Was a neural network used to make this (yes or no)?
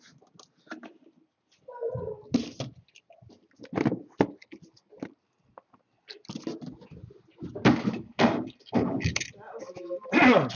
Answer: no